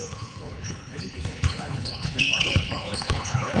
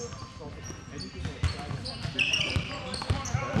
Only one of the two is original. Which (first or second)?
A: second